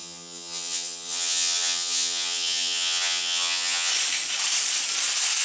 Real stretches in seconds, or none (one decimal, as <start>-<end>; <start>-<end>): 3.9-5.4